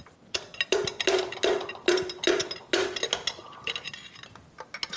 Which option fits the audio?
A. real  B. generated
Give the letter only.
A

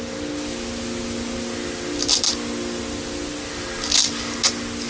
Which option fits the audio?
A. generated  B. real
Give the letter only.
B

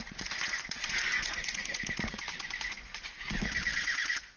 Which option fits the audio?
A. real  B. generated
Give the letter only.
B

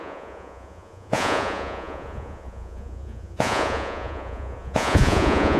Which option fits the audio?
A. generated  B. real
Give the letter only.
A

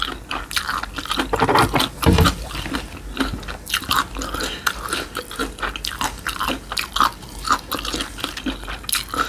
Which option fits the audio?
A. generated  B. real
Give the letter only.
B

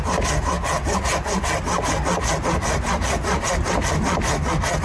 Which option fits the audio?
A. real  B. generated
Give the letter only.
A